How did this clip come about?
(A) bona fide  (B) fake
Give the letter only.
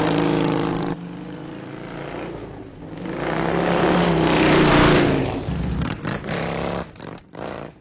B